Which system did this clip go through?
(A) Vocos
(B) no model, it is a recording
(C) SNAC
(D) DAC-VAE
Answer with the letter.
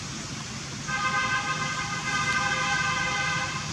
B